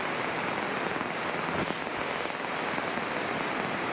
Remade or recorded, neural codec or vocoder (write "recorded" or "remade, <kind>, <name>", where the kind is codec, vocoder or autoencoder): recorded